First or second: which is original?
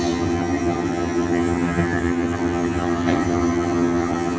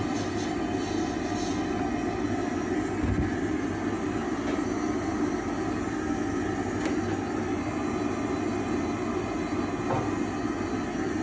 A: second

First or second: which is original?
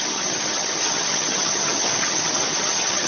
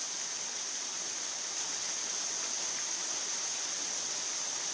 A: second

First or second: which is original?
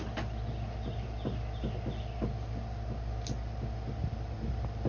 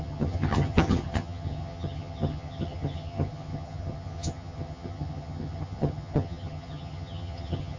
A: first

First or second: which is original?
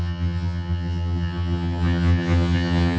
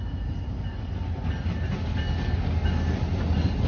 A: second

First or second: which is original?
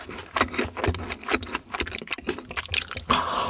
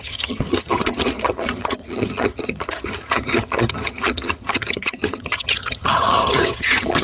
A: first